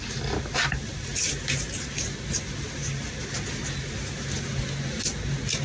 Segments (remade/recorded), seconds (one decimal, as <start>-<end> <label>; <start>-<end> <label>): 0.0-5.6 recorded